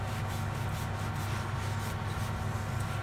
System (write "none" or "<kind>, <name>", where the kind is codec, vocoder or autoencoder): none